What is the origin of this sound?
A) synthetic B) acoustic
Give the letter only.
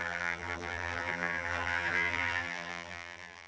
A